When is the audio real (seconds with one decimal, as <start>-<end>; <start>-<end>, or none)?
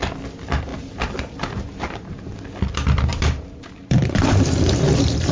0.0-0.7; 2.4-3.1